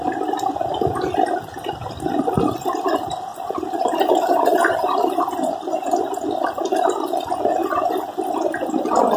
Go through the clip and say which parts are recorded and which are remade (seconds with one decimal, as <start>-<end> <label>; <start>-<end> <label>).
0.0-3.3 recorded; 3.3-5.2 remade; 5.2-9.2 recorded